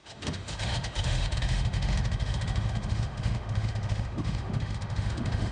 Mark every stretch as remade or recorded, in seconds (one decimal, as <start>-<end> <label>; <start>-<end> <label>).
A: 0.0-5.5 remade